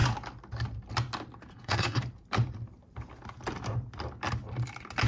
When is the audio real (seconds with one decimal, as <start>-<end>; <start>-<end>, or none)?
0.0-1.5; 2.0-5.1

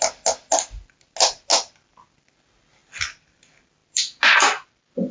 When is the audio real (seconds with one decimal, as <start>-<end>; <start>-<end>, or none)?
0.0-5.1

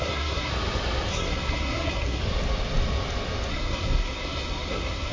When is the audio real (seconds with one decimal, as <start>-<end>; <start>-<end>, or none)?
0.5-1.1; 2.2-3.5

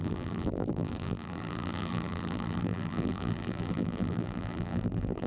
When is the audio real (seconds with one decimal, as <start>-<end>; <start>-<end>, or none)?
none